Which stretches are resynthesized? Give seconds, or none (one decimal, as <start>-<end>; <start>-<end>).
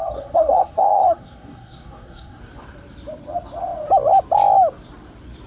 0.0-2.4